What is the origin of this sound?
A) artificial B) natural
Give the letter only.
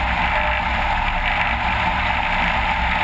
B